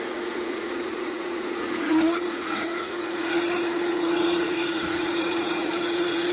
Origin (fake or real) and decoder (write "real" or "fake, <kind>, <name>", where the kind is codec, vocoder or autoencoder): fake, vocoder, Vocos